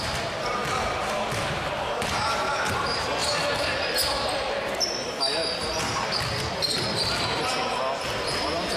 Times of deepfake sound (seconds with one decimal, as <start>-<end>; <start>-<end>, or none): none